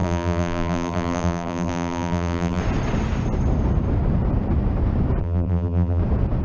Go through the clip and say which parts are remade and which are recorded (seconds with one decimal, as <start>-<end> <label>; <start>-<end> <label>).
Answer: 0.0-2.6 remade; 2.6-5.2 recorded; 5.2-6.0 remade; 6.0-6.4 recorded